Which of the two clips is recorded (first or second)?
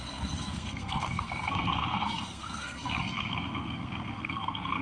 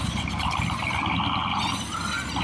second